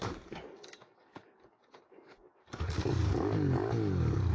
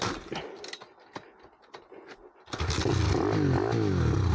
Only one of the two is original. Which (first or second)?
second